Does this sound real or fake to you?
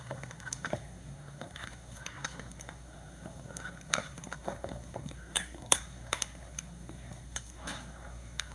fake